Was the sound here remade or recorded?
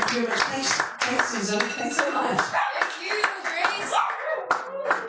recorded